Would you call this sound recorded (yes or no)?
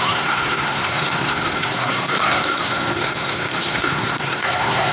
no